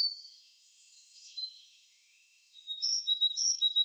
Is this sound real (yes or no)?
no